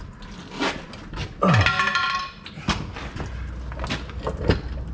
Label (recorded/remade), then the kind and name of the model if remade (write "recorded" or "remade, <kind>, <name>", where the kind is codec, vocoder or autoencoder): recorded